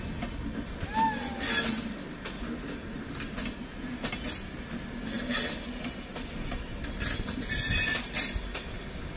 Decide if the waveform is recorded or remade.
recorded